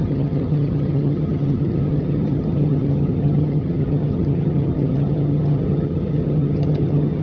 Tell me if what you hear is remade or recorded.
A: remade